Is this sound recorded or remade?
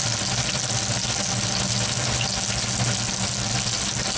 recorded